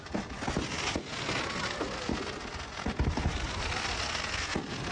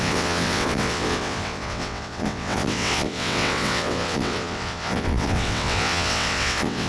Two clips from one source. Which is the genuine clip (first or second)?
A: first